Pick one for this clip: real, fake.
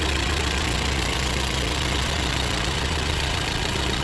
fake